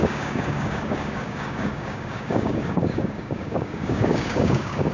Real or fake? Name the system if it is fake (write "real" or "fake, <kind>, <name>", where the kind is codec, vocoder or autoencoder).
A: fake, codec, DAC